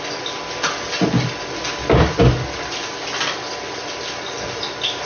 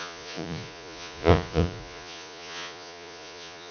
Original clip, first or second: first